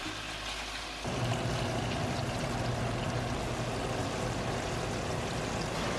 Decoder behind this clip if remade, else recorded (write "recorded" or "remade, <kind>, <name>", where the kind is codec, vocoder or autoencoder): recorded